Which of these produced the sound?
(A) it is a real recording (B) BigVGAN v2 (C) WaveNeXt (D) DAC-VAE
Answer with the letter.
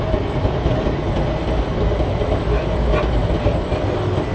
A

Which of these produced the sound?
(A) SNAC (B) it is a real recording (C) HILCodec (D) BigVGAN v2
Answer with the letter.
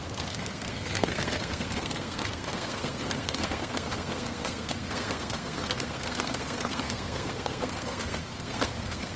A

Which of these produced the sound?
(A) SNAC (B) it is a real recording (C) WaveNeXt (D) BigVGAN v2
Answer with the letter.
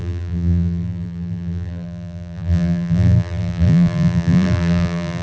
D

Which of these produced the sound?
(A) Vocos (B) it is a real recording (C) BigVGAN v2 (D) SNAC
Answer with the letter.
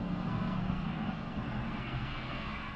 D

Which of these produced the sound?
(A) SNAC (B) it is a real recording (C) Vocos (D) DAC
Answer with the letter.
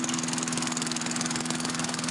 D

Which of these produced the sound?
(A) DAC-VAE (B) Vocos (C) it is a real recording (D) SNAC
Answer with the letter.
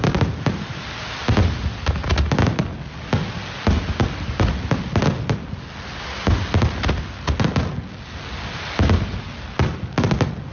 C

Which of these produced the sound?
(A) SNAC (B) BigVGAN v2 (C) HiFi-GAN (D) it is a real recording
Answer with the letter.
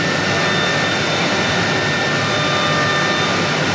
D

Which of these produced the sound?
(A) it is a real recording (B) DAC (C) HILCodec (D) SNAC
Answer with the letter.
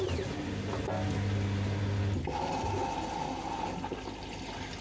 A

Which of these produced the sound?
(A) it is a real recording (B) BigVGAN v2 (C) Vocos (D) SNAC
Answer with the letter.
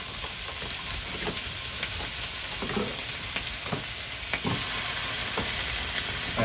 A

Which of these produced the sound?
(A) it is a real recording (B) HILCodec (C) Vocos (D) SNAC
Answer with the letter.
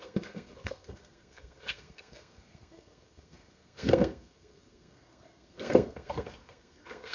D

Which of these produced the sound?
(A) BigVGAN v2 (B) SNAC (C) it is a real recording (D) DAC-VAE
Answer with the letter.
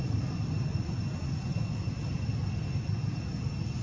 C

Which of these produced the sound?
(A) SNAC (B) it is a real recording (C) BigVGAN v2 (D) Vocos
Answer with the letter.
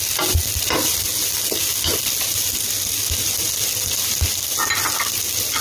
B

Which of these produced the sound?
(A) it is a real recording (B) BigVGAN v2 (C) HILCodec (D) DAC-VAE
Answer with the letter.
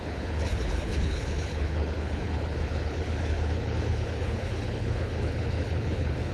C